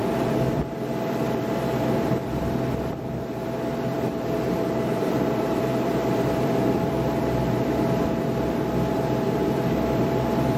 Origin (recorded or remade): remade